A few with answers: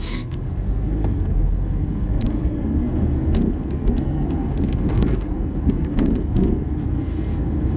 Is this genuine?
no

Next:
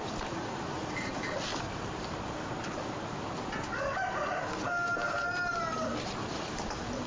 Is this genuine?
yes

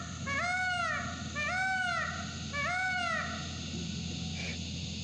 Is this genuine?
yes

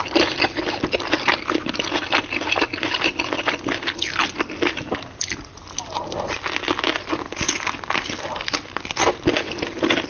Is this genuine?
yes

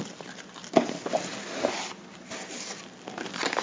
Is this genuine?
yes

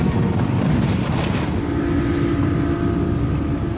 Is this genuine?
yes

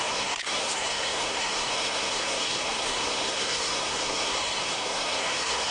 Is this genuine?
no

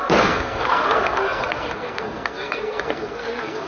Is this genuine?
no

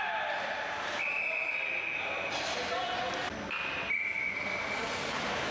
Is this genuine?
yes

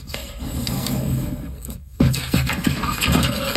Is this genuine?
no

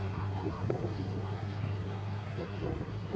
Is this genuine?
no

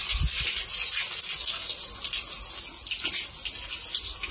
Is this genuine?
yes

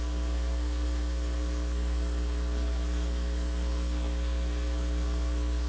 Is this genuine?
no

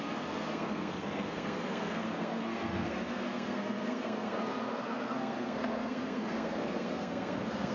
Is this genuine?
no